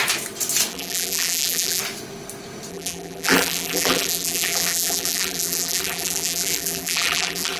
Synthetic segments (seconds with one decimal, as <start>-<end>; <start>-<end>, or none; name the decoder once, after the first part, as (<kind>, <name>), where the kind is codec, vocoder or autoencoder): 0.7-1.8 (vocoder, BigVGAN v2); 2.7-7.6